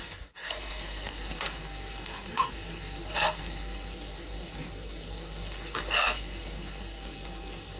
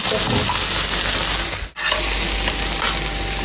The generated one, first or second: first